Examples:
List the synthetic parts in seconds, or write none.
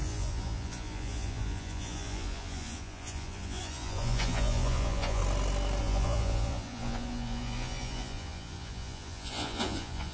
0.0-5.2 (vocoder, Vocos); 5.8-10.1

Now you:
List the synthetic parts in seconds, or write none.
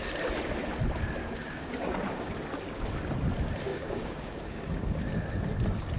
1.2-2.4 (codec, DAC); 3.7-5.1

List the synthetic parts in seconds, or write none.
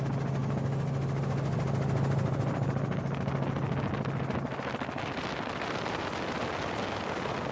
none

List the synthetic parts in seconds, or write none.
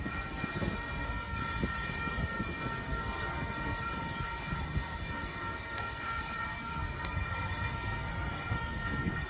0.0-1.4 (codec, SNAC); 2.0-3.9; 4.6-9.3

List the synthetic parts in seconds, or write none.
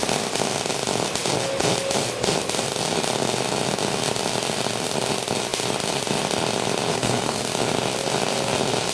6.9-7.4 (codec, SNAC)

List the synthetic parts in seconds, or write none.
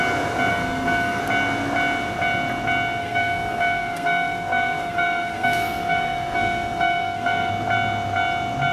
0.5-1.2 (codec, SNAC); 3.0-7.5